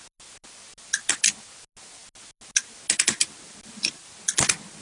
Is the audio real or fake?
real